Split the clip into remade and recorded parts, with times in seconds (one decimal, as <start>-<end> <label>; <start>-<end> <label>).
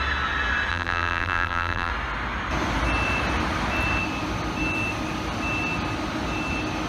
0.0-0.7 recorded; 0.7-1.9 remade; 1.9-6.9 recorded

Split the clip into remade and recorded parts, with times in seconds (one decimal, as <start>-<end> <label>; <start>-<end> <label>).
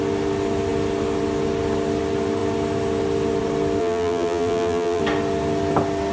0.0-3.8 recorded; 3.8-5.0 remade; 5.0-6.1 recorded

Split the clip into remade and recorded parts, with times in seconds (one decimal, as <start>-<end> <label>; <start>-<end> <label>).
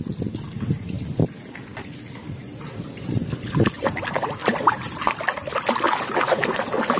0.0-2.2 recorded; 2.2-3.2 remade; 3.2-4.4 recorded; 4.4-5.2 remade; 5.2-7.0 recorded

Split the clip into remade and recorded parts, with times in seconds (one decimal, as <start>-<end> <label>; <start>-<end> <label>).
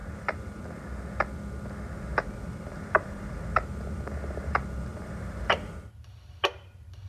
0.0-0.6 remade; 0.6-2.1 recorded; 2.1-5.7 remade; 5.7-7.1 recorded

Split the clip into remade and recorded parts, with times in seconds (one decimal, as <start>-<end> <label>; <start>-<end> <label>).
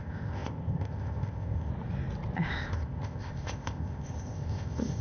0.0-1.7 remade; 1.7-2.4 recorded; 2.4-5.0 remade